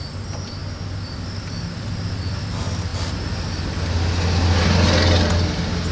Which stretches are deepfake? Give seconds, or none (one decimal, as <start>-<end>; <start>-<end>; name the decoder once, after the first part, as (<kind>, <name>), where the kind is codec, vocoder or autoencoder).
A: none